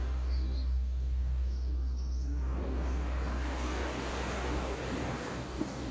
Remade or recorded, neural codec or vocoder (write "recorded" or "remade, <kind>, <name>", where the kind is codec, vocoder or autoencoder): remade, codec, DAC